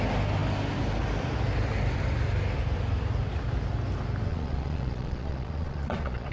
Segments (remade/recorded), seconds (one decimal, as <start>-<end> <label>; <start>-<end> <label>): 0.0-4.3 recorded; 4.3-6.3 remade

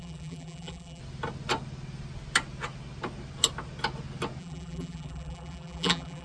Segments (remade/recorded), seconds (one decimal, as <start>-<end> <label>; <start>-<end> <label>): 0.0-1.0 remade; 1.0-4.4 recorded; 4.4-6.2 remade

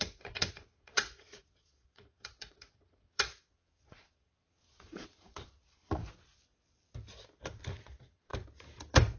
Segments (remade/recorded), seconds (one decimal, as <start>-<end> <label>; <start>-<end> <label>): 0.0-6.0 remade; 6.0-7.7 recorded; 7.7-8.3 remade; 8.3-9.2 recorded

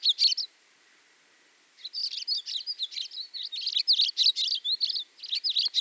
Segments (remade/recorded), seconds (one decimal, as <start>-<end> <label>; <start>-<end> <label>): 0.0-5.8 recorded